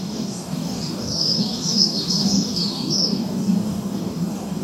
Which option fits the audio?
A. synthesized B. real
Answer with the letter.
A